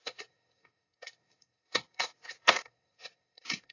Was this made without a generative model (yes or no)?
no